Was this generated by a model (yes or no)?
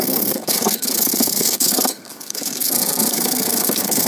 yes